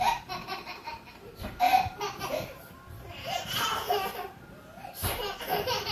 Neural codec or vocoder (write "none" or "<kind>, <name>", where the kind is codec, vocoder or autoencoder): vocoder, BigVGAN v2